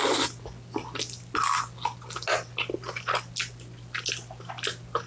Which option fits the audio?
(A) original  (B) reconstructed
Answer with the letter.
A